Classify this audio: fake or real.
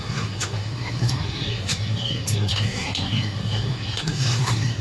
fake